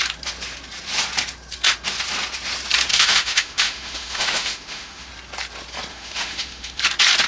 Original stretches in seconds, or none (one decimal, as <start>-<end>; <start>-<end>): 0.0-2.9; 5.1-5.9; 6.8-7.3